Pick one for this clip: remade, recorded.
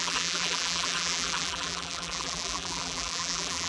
remade